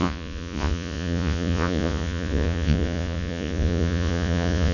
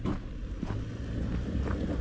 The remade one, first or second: first